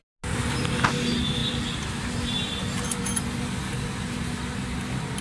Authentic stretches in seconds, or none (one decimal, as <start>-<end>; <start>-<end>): 0.0-5.2